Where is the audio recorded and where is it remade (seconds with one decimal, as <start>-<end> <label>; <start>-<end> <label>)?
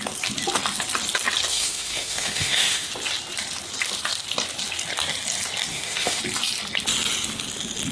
0.0-1.5 recorded; 1.5-2.9 remade; 2.9-5.7 recorded; 5.7-6.2 remade; 6.2-7.9 recorded